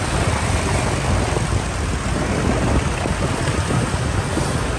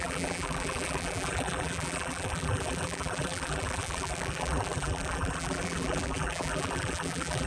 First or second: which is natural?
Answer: first